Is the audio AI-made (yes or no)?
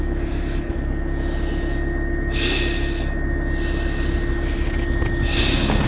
no